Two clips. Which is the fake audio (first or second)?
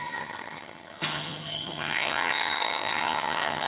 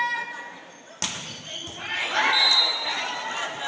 first